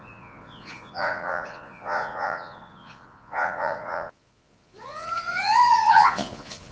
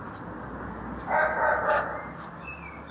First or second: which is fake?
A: first